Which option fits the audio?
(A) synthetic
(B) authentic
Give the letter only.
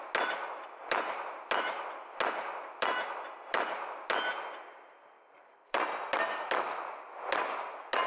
B